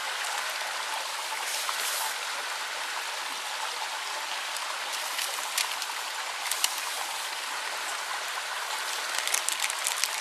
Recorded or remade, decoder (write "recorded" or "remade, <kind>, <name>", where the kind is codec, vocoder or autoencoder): recorded